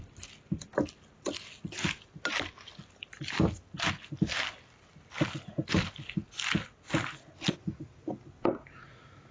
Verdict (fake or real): real